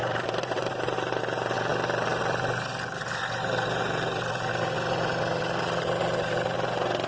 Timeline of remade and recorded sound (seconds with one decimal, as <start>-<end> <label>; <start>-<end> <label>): 0.0-7.1 recorded